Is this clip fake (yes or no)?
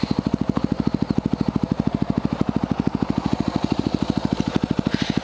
no